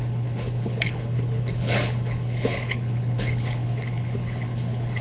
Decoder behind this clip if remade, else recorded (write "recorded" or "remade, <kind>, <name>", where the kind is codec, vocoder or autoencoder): remade, codec, HILCodec